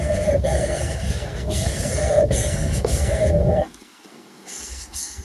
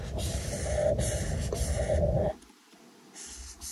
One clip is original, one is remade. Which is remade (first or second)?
first